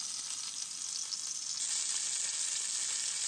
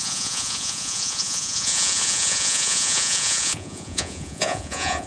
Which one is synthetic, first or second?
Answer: second